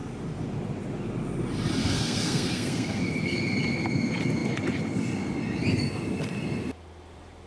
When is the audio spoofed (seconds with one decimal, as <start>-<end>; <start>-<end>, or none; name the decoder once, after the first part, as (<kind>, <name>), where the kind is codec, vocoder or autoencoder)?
1.8-3.0 (codec, SNAC)